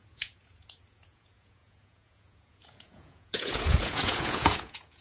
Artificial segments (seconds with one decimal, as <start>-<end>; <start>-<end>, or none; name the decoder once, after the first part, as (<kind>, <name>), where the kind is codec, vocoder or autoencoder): 0.0-5.0 (vocoder, Vocos)